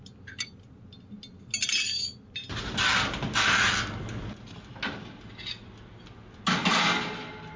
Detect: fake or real real